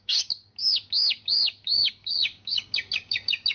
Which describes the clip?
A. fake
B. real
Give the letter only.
A